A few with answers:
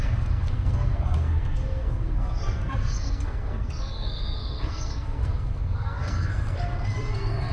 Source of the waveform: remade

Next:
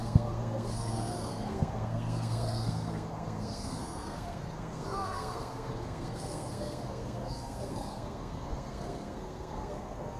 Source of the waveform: remade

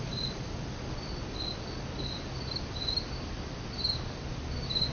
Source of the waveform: recorded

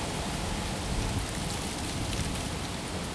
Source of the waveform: recorded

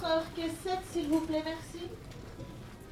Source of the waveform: recorded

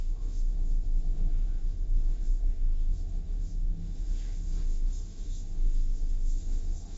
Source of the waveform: remade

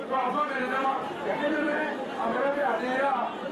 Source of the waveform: recorded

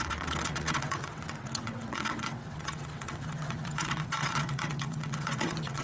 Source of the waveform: remade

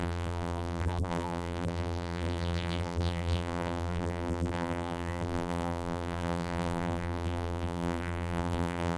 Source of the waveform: remade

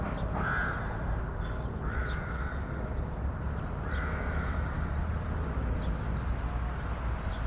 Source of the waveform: recorded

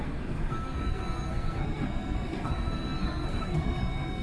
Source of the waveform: remade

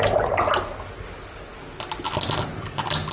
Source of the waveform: recorded